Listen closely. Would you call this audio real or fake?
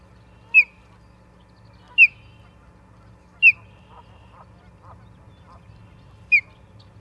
real